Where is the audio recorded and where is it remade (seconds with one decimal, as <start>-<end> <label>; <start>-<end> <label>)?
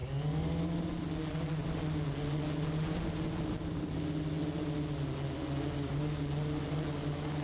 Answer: 0.0-7.4 recorded